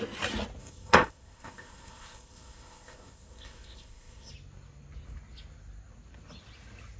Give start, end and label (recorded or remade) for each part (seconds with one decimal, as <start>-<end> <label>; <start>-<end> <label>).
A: 0.0-0.6 recorded; 0.6-4.3 remade; 4.3-7.0 recorded